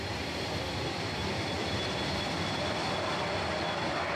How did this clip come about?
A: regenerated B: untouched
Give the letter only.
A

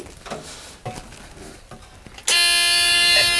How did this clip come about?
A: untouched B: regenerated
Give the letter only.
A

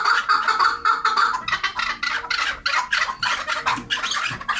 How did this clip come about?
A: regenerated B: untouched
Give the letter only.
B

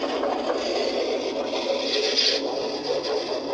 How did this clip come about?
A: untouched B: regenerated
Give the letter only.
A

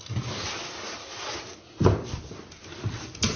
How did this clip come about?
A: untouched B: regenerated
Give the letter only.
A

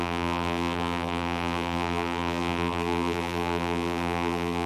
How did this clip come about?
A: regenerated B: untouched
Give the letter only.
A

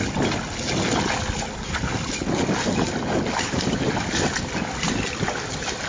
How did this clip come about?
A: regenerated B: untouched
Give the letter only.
B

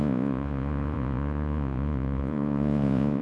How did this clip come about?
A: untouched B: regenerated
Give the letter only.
B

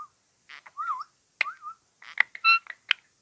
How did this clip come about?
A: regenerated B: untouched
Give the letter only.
B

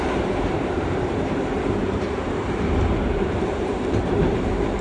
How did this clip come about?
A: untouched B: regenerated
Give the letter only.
B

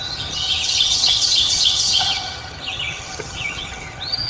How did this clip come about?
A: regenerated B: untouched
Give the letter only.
A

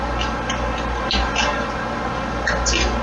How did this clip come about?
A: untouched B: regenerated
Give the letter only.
A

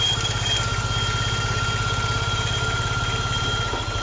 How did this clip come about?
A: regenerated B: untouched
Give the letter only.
A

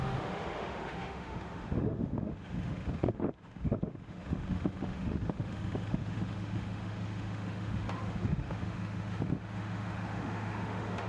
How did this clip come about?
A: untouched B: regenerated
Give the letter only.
B